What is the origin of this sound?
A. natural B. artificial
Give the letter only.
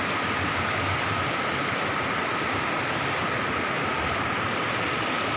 A